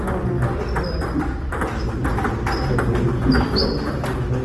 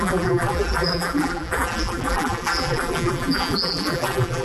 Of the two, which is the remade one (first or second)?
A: second